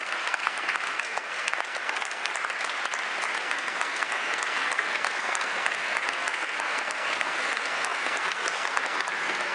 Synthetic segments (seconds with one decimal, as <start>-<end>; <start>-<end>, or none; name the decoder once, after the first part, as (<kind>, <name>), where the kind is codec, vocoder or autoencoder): 0.0-2.3 (codec, SNAC); 3.4-9.5